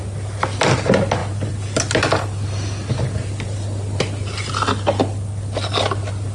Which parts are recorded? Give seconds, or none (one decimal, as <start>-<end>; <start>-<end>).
0.0-6.3